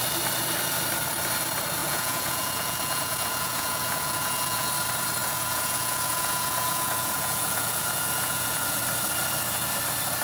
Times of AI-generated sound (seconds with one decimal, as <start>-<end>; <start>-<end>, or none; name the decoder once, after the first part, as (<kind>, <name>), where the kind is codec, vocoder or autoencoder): 1.8-4.7 (vocoder, Vocos); 5.2-8.8